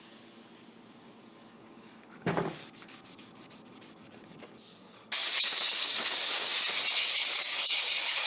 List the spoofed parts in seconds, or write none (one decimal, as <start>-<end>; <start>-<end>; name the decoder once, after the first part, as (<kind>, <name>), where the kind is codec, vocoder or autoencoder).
0.0-6.5 (codec, DAC); 7.0-8.3